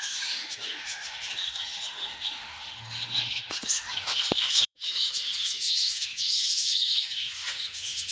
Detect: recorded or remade remade